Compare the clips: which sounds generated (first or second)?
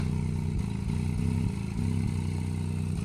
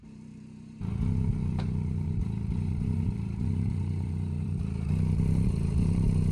second